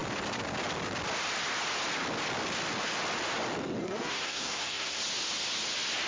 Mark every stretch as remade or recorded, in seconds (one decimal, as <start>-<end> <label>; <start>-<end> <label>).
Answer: 0.0-3.8 recorded; 3.8-5.0 remade; 5.0-6.1 recorded

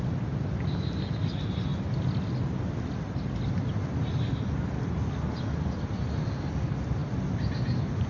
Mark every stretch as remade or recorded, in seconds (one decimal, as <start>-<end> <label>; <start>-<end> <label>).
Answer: 0.0-8.1 recorded

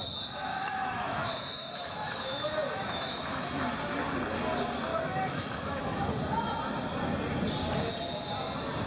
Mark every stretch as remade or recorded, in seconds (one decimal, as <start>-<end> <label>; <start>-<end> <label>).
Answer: 0.0-0.5 recorded; 0.5-3.6 remade; 3.6-4.9 recorded; 4.9-6.1 remade; 6.1-8.9 recorded

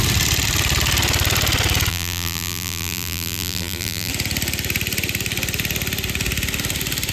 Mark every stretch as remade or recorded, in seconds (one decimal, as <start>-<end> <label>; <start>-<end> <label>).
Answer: 0.0-1.9 recorded; 1.9-4.1 remade; 4.1-7.1 recorded